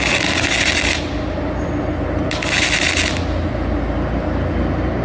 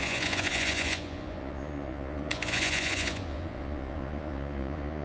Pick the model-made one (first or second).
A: second